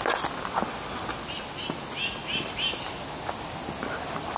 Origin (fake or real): real